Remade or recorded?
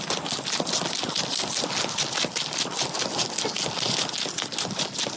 recorded